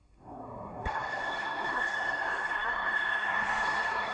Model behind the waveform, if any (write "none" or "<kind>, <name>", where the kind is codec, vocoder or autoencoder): codec, SNAC